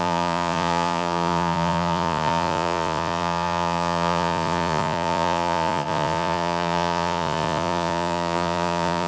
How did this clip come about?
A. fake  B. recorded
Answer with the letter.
A